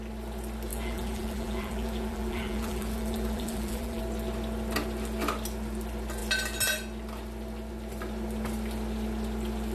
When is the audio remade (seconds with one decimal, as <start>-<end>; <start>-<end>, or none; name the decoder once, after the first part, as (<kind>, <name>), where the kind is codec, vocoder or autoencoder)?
0.7-4.0 (vocoder, BigVGAN v2)